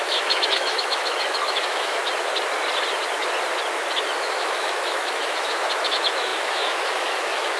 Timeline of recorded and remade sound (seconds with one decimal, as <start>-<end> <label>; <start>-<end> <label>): 0.0-2.0 remade; 2.0-4.2 recorded; 4.2-7.6 remade